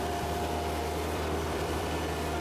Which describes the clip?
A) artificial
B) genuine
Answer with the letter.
A